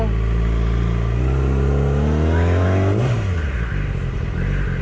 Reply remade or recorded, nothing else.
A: recorded